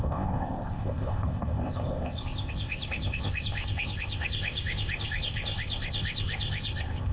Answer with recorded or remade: remade